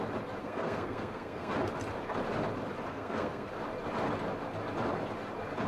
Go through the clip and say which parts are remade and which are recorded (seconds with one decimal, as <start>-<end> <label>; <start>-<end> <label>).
0.0-0.4 recorded; 0.4-1.5 remade; 1.5-2.9 recorded; 2.9-3.5 remade; 3.5-5.7 recorded